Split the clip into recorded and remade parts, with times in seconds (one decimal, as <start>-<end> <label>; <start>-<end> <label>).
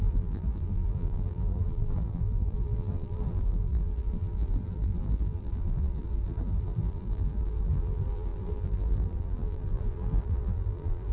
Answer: 0.0-11.1 remade